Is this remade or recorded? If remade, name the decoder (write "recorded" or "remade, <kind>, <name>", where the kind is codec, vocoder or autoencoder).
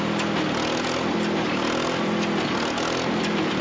recorded